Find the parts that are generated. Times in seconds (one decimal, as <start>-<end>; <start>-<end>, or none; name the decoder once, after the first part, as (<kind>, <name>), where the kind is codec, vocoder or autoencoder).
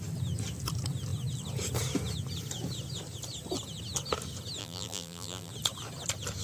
4.6-5.5 (vocoder, BigVGAN v2)